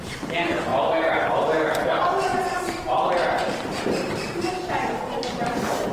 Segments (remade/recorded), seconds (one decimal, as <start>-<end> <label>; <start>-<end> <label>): 0.0-0.7 recorded; 0.7-1.3 remade; 1.3-2.3 recorded; 2.3-5.9 remade